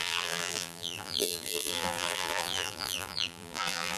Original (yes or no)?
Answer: no